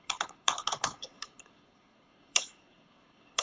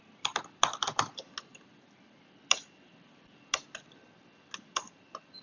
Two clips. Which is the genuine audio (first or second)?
second